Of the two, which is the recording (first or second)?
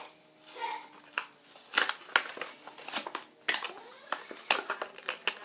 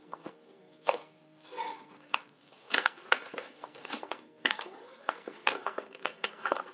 first